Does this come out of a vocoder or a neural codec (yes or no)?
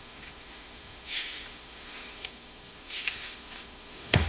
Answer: yes